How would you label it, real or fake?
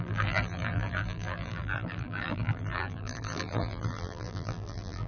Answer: fake